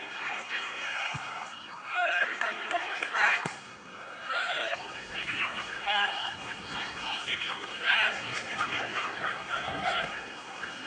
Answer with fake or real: fake